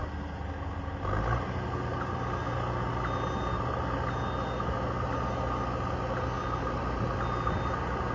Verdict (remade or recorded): recorded